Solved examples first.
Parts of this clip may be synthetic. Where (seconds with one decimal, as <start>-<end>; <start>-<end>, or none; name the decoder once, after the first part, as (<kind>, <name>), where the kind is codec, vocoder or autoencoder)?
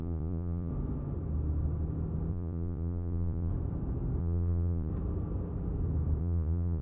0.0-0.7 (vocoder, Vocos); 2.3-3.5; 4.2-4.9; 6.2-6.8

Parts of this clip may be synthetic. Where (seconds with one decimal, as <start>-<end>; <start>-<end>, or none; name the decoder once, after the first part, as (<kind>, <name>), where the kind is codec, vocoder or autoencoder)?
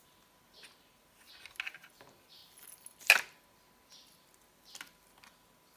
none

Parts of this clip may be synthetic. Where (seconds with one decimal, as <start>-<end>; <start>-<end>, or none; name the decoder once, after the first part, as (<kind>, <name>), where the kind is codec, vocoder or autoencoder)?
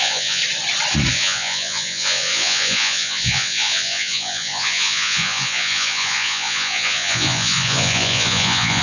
0.0-0.4 (vocoder, Vocos); 1.1-8.8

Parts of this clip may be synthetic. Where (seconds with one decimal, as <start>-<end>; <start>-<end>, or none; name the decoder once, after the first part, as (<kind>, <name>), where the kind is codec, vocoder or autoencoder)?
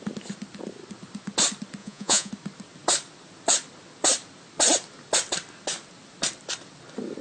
1.8-2.3 (vocoder, Vocos)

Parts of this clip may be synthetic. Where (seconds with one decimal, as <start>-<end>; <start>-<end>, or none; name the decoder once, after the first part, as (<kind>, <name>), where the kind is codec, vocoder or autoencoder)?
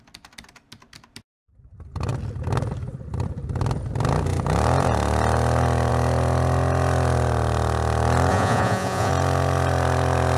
8.3-9.1 (vocoder, Vocos)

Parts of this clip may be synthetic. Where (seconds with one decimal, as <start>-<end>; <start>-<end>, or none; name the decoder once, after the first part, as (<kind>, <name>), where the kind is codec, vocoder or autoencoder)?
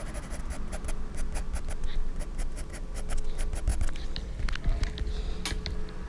none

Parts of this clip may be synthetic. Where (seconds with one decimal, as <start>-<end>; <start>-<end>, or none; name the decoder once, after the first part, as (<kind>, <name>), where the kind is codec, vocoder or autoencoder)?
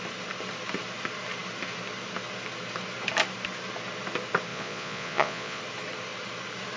4.5-5.6 (vocoder, Vocos)